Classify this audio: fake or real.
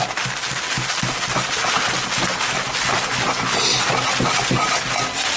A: real